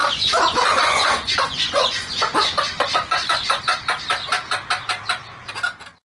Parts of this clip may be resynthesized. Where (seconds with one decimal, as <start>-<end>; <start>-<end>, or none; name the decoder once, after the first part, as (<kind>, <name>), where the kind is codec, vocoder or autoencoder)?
0.0-3.6 (vocoder, Vocos)